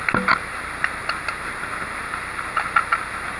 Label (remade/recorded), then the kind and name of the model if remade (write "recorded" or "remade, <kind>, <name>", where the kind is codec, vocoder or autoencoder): recorded